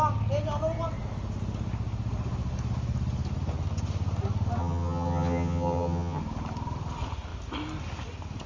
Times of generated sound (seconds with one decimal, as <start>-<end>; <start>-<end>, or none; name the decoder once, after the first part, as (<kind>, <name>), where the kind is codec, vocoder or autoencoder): 4.6-6.2 (vocoder, HiFi-GAN)